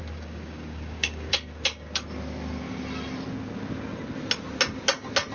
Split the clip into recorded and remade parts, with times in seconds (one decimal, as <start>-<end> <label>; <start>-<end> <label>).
0.0-1.3 remade; 1.3-5.3 recorded